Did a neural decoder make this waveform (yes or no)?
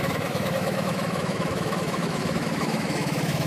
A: yes